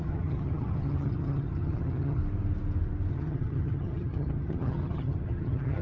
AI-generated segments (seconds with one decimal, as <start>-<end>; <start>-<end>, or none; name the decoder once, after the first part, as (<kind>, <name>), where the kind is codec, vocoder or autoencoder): 0.0-2.2 (vocoder, HiFi-GAN); 3.1-5.8